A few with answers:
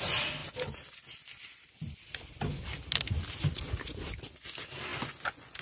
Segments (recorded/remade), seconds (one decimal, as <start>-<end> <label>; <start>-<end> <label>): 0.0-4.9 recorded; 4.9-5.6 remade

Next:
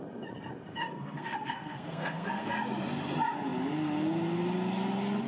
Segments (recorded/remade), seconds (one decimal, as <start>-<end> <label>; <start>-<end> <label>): 0.0-0.7 recorded; 0.7-2.5 remade; 2.5-5.3 recorded

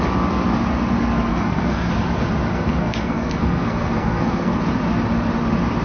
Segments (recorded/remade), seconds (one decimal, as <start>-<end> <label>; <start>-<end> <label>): 0.0-1.3 recorded; 1.3-1.9 remade; 1.9-2.5 recorded; 2.5-4.6 remade; 4.6-5.8 recorded

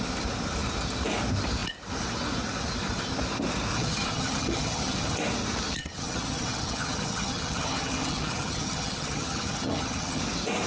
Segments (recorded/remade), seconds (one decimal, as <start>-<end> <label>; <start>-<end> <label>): 0.0-3.7 recorded; 3.7-5.2 remade; 5.2-5.8 recorded; 5.8-10.2 remade; 10.2-10.7 recorded

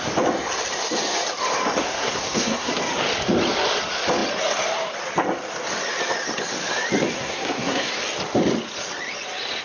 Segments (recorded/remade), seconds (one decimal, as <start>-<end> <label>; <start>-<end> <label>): 0.0-1.8 recorded; 1.8-2.7 remade; 2.7-7.2 recorded; 7.2-7.9 remade; 7.9-9.6 recorded